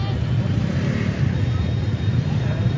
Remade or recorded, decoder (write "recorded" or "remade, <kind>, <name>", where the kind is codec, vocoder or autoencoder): recorded